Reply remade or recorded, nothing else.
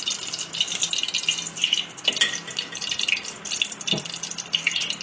recorded